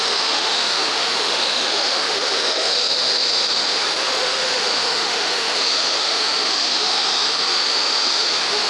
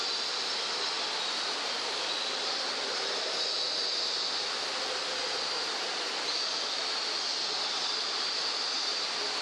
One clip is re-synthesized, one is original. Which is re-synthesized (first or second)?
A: first